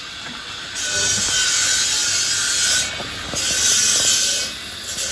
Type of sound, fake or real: real